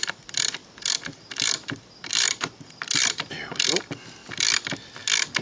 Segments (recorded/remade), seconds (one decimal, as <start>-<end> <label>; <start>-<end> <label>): 0.0-0.6 recorded; 0.6-3.8 remade; 3.8-5.4 recorded